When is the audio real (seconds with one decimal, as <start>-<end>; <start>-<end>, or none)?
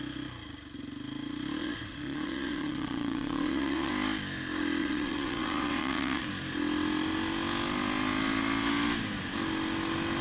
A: 0.0-1.6; 3.9-4.8; 6.3-10.2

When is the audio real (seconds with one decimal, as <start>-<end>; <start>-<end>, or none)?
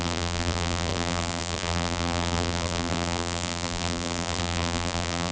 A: none